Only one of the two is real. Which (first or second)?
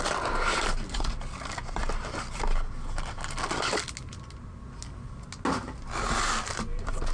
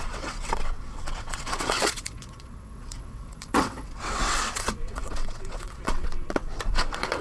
first